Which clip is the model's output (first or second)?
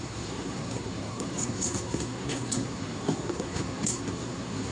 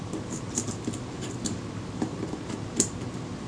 first